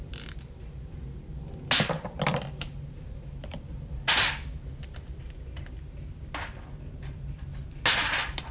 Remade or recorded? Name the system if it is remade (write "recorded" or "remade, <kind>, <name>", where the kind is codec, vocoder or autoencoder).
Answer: recorded